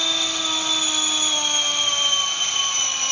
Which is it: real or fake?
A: real